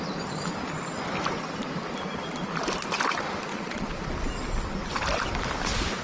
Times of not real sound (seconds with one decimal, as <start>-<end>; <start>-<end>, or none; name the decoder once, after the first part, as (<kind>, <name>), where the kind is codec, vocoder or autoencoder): 3.5-4.1 (vocoder, Vocos)